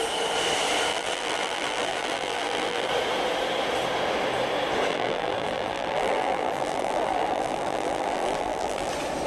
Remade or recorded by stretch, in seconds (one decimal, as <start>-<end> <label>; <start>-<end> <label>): 0.0-0.9 recorded; 0.9-2.9 remade; 2.9-4.9 recorded; 4.9-8.9 remade; 8.9-9.3 recorded